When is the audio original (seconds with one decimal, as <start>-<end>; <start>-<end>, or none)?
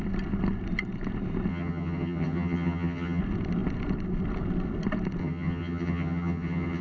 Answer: 0.0-1.5; 3.2-5.2